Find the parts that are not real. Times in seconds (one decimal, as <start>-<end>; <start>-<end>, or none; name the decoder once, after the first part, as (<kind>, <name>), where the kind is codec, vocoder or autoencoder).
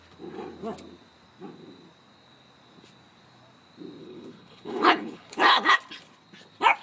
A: 4.0-5.8 (codec, HILCodec)